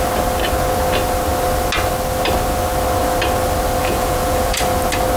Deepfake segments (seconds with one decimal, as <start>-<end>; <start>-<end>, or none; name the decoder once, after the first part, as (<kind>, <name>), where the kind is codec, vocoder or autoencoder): 3.8-4.6 (vocoder, Vocos)